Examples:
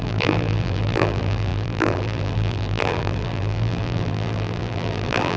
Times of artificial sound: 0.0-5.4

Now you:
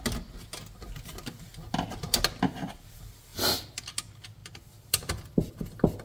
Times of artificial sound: none

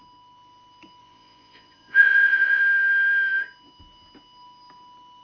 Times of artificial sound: 1.0-2.6

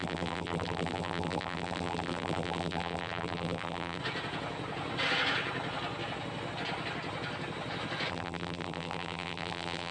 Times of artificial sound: 0.0-4.0; 8.1-9.9

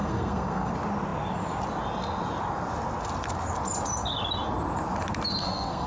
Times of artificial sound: 0.0-0.7; 5.4-5.9

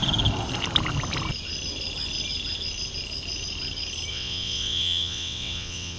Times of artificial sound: 4.1-6.0

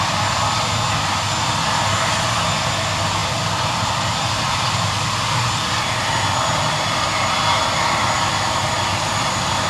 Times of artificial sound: none